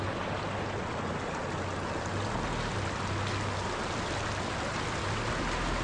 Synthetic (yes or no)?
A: no